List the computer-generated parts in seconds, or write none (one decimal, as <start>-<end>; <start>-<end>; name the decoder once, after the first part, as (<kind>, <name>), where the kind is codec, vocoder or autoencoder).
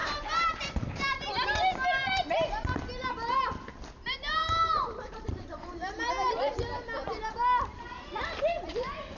0.0-0.5 (vocoder, BigVGAN v2); 4.4-9.2